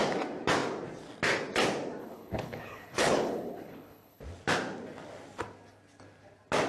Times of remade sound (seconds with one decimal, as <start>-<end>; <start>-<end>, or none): 2.0-4.2

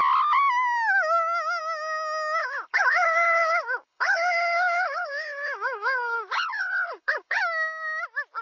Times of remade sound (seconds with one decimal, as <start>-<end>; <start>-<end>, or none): 2.4-7.4

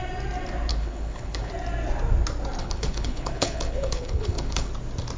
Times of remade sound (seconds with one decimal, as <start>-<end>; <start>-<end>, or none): 0.7-1.5; 2.6-4.7

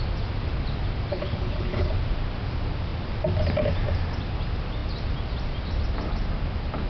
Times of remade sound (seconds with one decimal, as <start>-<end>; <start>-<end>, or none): 1.1-1.9